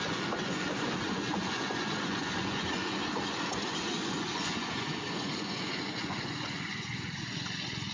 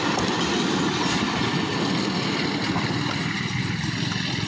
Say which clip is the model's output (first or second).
first